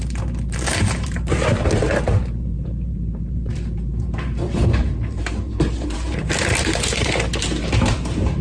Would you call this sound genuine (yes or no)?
no